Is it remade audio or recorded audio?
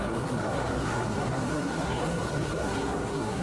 remade